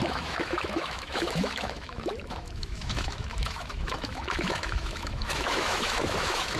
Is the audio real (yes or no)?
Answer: no